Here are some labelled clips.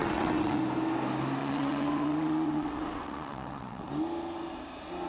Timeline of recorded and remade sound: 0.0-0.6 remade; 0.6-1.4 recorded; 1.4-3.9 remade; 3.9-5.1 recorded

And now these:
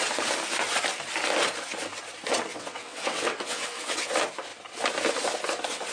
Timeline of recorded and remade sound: 0.0-2.5 recorded; 2.5-4.1 remade; 4.1-5.9 recorded